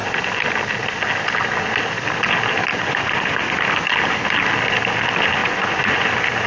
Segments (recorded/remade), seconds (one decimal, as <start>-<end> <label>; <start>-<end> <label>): 0.0-2.7 recorded; 2.7-3.6 remade; 3.6-5.4 recorded; 5.4-6.1 remade; 6.1-6.5 recorded